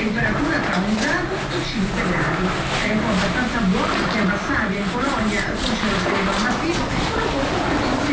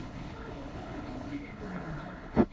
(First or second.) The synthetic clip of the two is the second